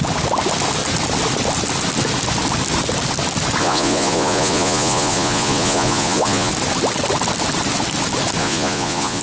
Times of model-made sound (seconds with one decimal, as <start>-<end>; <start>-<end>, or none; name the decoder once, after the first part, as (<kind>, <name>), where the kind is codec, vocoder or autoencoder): 3.6-6.5 (vocoder, Vocos); 8.4-9.2